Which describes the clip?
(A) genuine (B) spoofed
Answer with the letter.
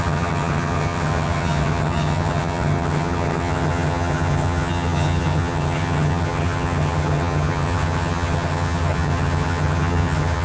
B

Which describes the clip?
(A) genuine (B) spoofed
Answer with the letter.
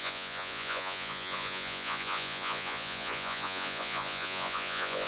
B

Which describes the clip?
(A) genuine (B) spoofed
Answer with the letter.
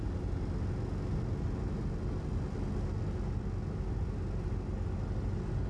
A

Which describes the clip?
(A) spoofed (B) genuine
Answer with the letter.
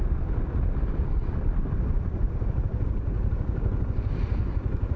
A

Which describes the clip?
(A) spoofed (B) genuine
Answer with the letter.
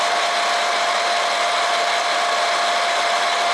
B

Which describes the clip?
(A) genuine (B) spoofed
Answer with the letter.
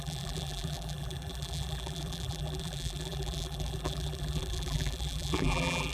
B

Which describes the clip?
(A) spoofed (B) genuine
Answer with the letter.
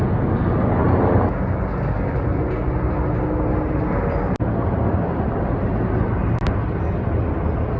B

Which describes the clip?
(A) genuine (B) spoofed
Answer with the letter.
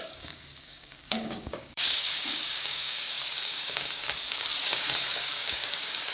B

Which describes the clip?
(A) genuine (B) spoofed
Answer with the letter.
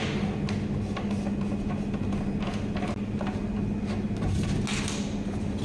A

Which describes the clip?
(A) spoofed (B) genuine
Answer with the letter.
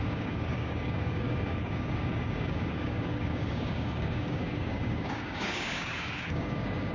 A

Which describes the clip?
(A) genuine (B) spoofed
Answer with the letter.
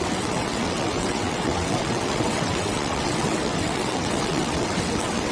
B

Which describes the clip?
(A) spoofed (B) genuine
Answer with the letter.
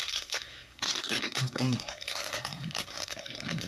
A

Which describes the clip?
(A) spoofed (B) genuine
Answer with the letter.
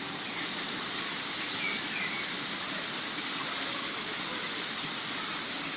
B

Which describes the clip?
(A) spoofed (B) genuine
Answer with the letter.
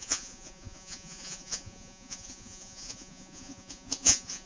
A